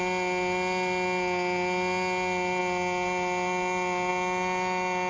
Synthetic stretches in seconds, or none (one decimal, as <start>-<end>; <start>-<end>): none